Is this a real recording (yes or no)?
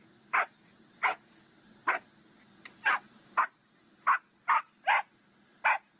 yes